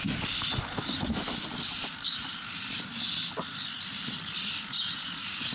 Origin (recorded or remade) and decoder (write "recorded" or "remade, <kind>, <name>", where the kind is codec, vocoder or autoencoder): recorded